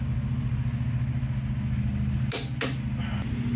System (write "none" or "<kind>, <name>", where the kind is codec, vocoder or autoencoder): none